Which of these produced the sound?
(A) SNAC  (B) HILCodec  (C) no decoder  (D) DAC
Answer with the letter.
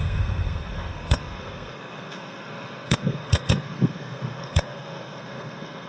A